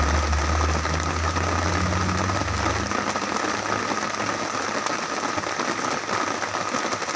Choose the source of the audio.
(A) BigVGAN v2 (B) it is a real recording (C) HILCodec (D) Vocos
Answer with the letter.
B